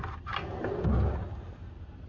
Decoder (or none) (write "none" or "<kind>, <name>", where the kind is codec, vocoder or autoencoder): none